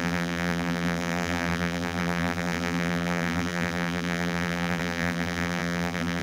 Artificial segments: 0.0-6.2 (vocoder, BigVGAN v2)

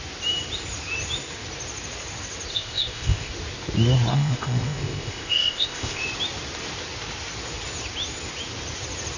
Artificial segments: 2.5-3.3 (codec, ZipCodec); 4.1-6.0